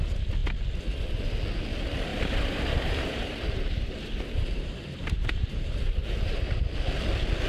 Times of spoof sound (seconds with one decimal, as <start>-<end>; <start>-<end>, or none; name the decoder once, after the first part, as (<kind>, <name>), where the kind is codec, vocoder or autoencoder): 2.1-6.6 (vocoder, BigVGAN v2)